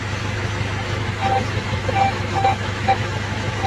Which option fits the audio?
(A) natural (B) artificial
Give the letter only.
B